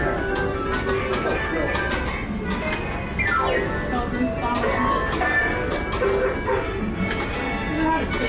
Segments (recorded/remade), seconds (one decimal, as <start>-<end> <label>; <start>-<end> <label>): 0.0-8.3 recorded

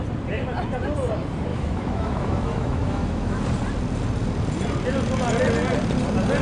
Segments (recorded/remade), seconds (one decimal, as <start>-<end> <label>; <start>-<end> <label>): 0.0-1.5 recorded; 1.5-3.4 remade; 3.4-6.4 recorded

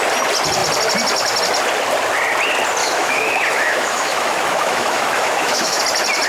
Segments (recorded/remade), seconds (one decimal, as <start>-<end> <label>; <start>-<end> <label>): 0.0-2.8 recorded; 2.8-5.8 remade; 5.8-6.3 recorded

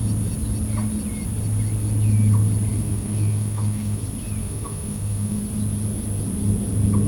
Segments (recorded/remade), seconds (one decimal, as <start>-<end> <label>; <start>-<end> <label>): 0.0-2.7 recorded; 2.7-4.0 remade; 4.0-4.4 recorded; 4.4-5.4 remade; 5.4-7.1 recorded